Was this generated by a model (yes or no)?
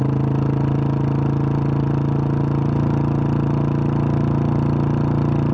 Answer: no